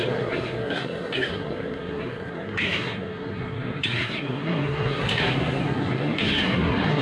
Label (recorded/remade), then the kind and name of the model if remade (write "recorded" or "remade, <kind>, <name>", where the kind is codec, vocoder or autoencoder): remade, codec, SNAC